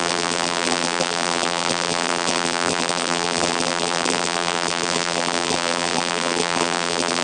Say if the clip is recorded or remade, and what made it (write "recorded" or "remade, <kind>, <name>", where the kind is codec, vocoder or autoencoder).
remade, vocoder, BigVGAN v2